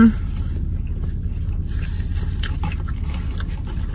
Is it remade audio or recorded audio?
recorded